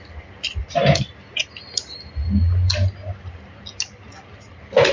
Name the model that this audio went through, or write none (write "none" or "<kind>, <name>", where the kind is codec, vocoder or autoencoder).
none